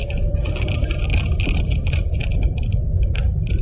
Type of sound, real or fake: fake